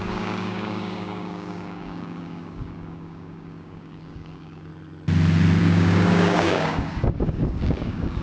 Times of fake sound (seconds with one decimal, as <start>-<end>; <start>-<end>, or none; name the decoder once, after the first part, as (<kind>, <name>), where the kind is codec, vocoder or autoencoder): 0.0-4.7 (codec, DAC); 5.6-8.2